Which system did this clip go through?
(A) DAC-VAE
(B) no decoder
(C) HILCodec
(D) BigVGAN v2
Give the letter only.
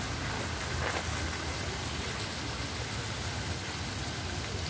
B